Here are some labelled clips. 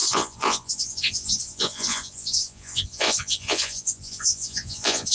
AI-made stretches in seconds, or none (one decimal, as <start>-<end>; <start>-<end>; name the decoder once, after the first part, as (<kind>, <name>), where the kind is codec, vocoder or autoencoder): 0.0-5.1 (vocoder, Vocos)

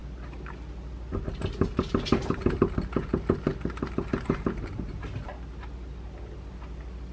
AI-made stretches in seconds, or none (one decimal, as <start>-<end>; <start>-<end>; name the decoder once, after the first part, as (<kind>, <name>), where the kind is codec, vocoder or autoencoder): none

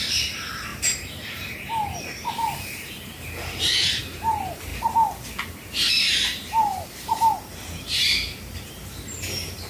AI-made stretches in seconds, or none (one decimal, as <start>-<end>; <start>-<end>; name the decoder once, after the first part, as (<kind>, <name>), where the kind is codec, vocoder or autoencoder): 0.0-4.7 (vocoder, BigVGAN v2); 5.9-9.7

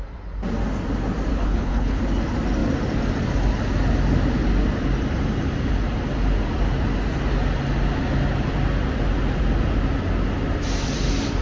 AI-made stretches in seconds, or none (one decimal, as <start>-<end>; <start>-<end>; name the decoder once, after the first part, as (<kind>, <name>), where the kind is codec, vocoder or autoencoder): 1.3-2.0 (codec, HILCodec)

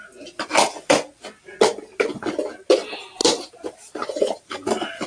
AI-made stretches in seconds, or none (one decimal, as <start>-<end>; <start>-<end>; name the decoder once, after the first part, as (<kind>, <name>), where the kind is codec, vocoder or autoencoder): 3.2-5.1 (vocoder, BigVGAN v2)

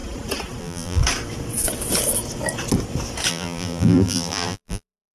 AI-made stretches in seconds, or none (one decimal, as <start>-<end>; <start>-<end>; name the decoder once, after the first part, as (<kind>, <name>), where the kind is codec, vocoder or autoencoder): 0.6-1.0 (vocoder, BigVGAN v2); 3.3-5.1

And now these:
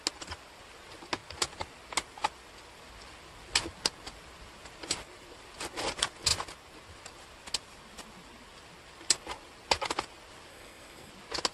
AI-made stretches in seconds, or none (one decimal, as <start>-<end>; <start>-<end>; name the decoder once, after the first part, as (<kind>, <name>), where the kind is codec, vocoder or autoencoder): 10.5-11.1 (codec, SNAC)

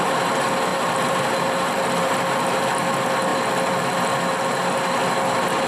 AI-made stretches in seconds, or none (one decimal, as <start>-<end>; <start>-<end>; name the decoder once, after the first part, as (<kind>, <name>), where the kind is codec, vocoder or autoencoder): 0.7-1.7 (vocoder, BigVGAN v2)